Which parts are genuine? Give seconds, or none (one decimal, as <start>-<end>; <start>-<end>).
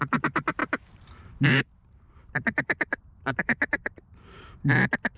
none